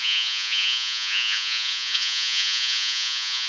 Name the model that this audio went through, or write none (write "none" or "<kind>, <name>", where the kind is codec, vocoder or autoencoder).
vocoder, Vocos